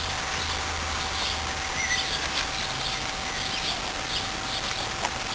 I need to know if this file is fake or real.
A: real